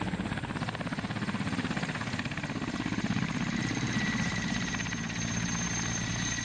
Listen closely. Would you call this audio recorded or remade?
recorded